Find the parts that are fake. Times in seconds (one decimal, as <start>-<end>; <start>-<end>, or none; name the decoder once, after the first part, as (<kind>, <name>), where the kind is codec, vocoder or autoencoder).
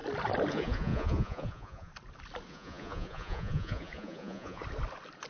0.5-1.9 (vocoder, Vocos); 2.5-4.6